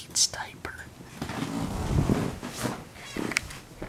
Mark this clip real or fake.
real